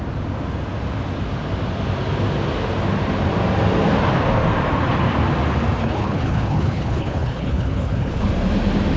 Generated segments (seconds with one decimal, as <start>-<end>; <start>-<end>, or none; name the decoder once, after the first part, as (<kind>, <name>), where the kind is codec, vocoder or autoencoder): 5.8-8.3 (codec, HILCodec)